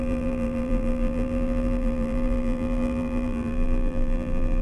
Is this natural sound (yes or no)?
no